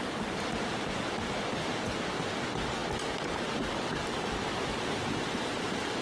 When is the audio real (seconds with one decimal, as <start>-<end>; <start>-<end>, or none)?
0.0-6.0